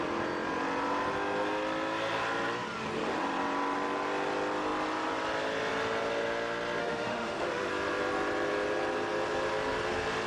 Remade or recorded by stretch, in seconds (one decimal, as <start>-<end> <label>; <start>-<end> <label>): 0.0-6.8 recorded; 6.8-7.7 remade; 7.7-10.3 recorded